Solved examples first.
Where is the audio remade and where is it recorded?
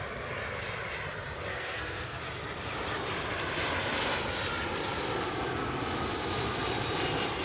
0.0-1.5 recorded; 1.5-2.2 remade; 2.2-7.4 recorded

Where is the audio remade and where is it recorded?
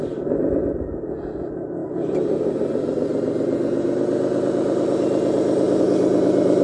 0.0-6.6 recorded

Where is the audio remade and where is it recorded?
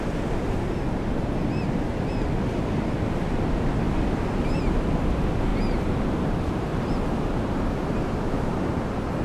0.0-5.5 recorded; 5.5-6.9 remade; 6.9-9.2 recorded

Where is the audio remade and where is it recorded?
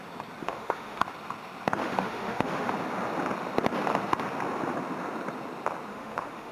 0.0-0.4 recorded; 0.4-1.0 remade; 1.0-1.8 recorded; 1.8-2.7 remade; 2.7-5.9 recorded; 5.9-6.5 remade